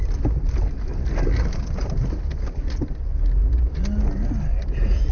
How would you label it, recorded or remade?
recorded